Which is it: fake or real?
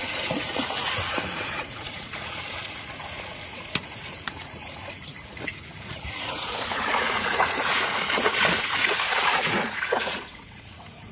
fake